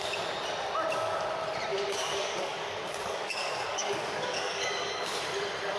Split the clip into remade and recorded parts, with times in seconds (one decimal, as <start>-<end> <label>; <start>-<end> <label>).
0.0-1.7 recorded; 1.7-5.2 remade; 5.2-5.8 recorded